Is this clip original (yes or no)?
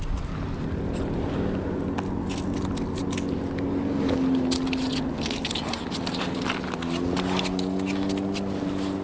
yes